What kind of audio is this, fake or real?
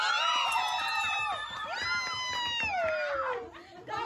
real